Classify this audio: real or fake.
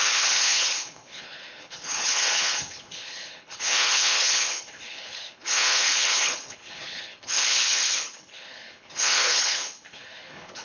fake